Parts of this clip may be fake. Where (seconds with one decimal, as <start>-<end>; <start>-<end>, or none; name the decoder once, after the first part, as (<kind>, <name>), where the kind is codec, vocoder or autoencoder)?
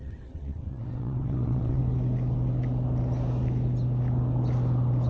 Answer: 0.0-1.8 (vocoder, WaveNeXt)